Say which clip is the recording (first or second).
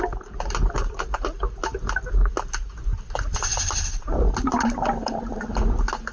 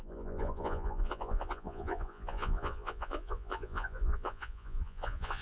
first